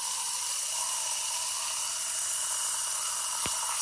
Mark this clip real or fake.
real